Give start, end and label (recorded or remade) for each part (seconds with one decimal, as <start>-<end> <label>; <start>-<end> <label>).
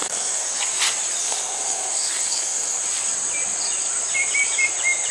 0.0-0.6 remade; 0.6-1.2 recorded; 1.2-2.8 remade; 2.8-5.1 recorded